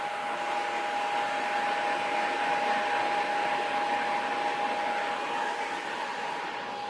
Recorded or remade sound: recorded